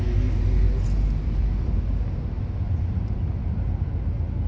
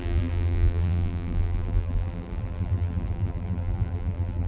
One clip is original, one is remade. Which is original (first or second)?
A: first